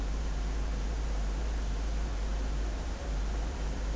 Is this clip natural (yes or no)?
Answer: no